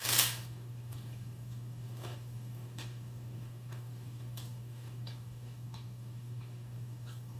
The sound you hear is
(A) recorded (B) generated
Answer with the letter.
B